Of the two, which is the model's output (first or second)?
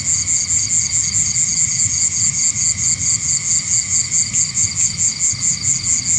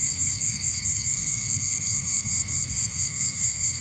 second